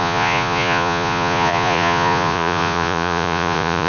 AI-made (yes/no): yes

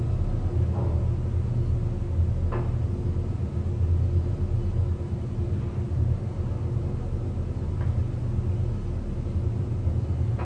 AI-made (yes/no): no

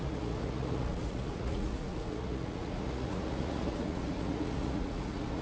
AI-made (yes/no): yes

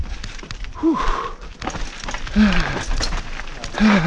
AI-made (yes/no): no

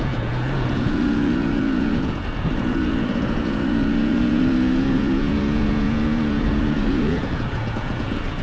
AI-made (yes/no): yes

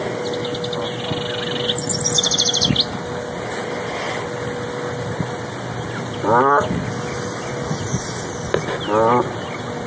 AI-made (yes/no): no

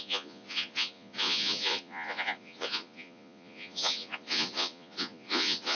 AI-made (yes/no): yes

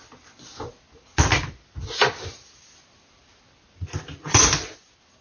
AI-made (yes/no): no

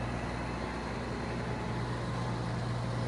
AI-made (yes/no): no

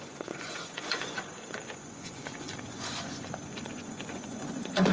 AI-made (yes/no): yes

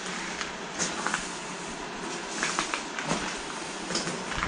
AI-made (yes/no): no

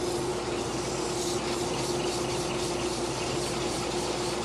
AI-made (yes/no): no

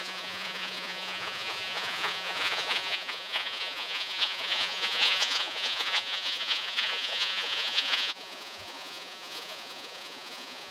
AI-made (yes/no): yes